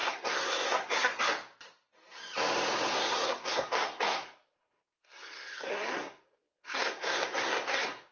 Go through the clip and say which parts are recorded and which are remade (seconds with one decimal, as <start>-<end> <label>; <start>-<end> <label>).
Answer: 0.0-1.2 remade; 1.2-2.9 recorded; 2.9-8.1 remade